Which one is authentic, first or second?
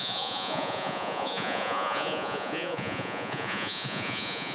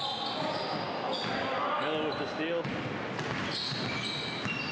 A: second